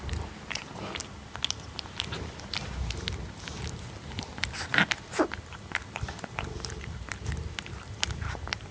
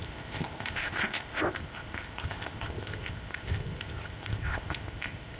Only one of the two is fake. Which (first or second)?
second